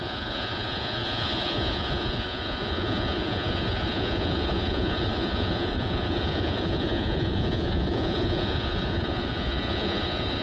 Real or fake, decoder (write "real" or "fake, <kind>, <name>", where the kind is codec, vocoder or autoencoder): fake, vocoder, Vocos